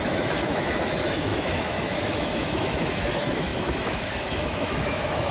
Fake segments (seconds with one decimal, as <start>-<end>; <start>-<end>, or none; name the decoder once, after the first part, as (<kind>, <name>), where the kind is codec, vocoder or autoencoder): 0.0-5.3 (autoencoder, DAC-VAE)